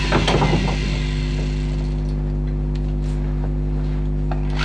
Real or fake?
real